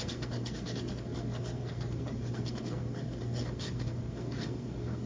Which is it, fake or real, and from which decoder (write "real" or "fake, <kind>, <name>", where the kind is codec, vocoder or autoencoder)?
fake, codec, SNAC